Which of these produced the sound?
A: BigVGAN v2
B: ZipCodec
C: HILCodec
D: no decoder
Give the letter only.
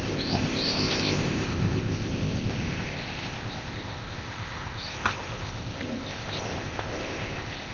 B